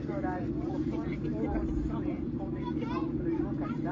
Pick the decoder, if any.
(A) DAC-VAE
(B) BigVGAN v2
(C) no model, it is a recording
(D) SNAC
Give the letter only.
B